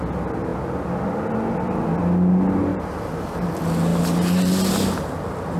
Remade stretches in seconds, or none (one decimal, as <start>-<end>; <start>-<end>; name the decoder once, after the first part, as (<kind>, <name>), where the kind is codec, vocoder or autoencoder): 2.7-3.5 (vocoder, BigVGAN v2); 3.9-4.7